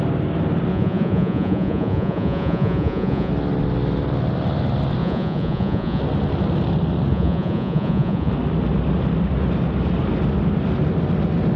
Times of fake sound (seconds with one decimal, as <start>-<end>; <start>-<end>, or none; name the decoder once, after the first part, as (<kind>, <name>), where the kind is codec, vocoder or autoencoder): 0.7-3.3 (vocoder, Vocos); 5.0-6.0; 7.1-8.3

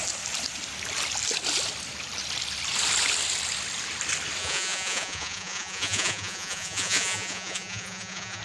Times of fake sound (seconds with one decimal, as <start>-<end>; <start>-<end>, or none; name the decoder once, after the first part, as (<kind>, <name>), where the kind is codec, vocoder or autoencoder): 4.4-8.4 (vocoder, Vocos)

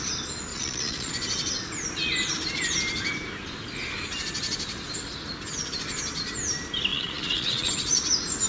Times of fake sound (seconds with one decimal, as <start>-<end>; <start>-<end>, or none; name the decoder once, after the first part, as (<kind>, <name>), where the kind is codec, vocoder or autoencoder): 0.5-1.1 (vocoder, Vocos); 6.9-7.7

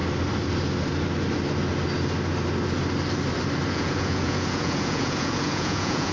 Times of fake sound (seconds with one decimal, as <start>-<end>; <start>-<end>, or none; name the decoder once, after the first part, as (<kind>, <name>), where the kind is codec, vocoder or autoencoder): 3.7-6.1 (vocoder, Vocos)